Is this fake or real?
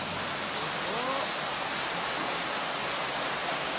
real